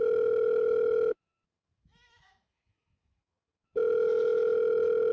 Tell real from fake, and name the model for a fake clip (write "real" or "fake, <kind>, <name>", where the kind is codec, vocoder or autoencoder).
fake, autoencoder, DAC-VAE